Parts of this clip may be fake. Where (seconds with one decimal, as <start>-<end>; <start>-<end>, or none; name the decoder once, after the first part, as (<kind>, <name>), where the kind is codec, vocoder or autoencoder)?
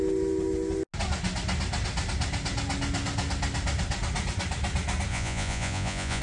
5.1-6.2 (vocoder, Vocos)